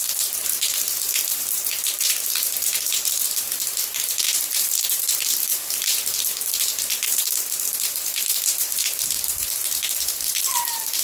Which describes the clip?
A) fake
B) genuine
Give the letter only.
A